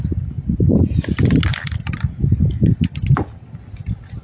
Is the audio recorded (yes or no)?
yes